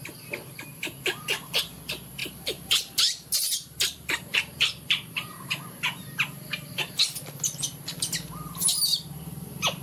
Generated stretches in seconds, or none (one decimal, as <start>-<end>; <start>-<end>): 2.2-7.0